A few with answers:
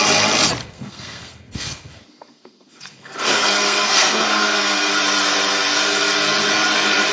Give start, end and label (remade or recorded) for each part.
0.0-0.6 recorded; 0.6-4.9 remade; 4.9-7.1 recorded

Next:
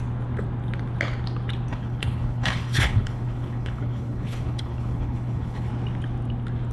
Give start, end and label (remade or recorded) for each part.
0.0-1.7 recorded; 1.7-5.7 remade; 5.7-6.7 recorded

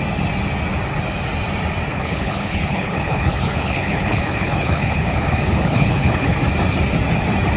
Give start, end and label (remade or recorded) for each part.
0.0-1.9 recorded; 1.9-6.4 remade; 6.4-7.6 recorded

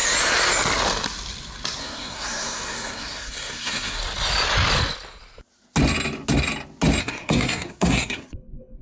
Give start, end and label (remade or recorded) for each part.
0.0-1.8 recorded; 1.8-4.0 remade; 4.0-7.0 recorded; 7.0-8.8 remade

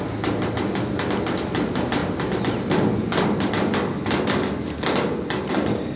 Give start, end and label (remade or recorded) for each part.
0.0-6.0 recorded